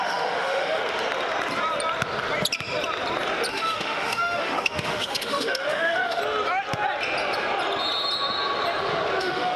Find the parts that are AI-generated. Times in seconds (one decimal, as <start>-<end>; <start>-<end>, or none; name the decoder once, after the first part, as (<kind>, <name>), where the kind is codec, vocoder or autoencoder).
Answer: 0.0-0.8 (autoencoder, DAC-VAE); 3.5-6.2; 9.2-9.6